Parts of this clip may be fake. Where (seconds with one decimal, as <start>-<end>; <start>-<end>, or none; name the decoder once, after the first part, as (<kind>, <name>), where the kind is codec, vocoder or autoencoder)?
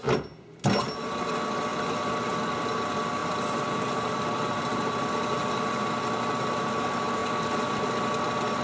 1.7-2.5 (vocoder, BigVGAN v2); 3.2-5.1; 7.2-7.9